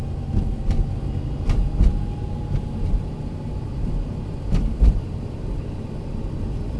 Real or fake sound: real